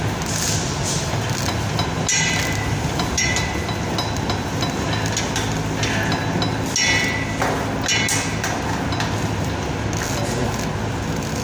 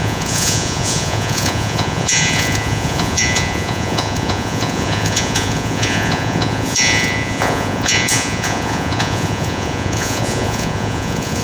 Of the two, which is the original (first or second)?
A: first